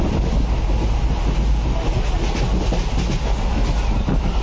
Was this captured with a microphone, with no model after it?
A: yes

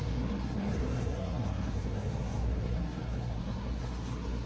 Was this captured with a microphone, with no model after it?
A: no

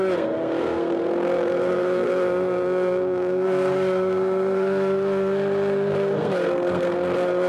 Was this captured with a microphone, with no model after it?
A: no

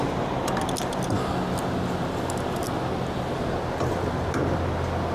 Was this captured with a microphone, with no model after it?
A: yes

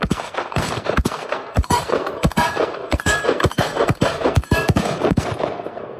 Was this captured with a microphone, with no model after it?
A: no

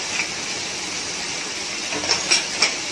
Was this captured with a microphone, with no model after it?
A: yes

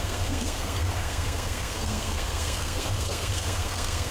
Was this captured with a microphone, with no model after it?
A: no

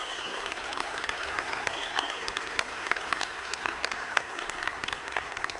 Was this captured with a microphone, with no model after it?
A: no